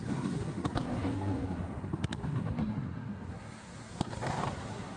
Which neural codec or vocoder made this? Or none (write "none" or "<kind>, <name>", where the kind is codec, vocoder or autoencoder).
codec, SNAC